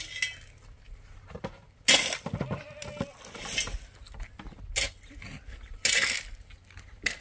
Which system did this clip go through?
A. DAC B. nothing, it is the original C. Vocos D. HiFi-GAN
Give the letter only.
B